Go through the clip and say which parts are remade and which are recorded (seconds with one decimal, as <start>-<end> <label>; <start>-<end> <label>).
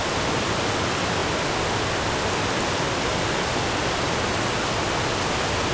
0.0-5.7 recorded